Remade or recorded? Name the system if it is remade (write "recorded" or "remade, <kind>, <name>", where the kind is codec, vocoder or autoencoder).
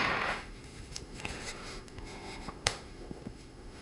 remade, autoencoder, DAC-VAE